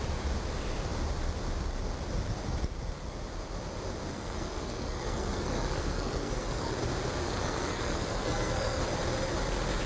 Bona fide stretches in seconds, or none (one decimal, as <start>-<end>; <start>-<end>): 0.0-4.1; 6.7-7.2; 8.8-9.9